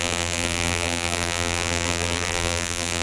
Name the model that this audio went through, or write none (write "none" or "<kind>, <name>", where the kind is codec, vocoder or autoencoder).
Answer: vocoder, BigVGAN v2